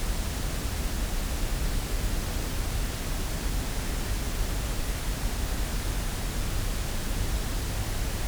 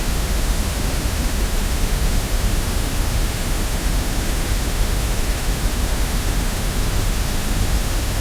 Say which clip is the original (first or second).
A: first